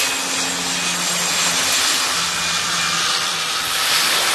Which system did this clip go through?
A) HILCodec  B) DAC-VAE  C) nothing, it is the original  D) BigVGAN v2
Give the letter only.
C